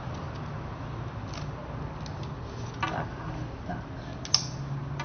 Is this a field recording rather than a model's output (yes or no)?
yes